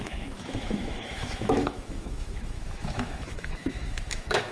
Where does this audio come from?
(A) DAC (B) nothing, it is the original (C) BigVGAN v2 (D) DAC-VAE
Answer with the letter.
D